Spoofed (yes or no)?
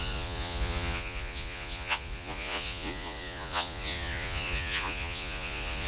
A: yes